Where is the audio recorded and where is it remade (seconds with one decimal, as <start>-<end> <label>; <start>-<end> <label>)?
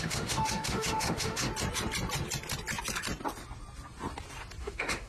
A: 0.0-1.5 remade; 1.5-4.6 recorded; 4.6-5.1 remade